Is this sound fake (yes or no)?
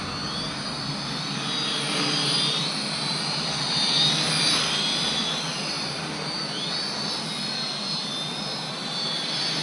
no